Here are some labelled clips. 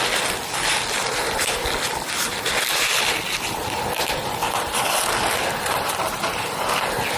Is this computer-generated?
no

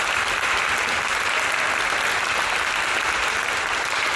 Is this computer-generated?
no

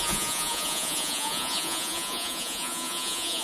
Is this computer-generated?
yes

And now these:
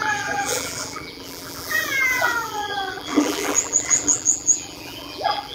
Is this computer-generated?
yes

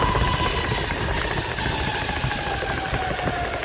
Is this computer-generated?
no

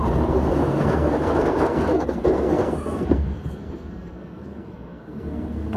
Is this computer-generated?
yes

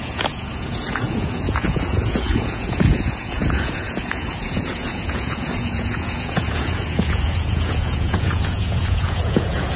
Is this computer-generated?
yes